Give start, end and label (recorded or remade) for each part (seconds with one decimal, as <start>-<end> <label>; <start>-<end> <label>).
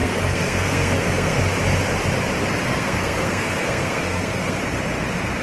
0.0-1.4 remade; 1.4-2.7 recorded; 2.7-4.6 remade; 4.6-5.4 recorded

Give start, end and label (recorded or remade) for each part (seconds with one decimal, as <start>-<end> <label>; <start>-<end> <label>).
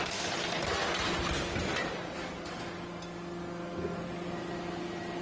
0.0-5.2 recorded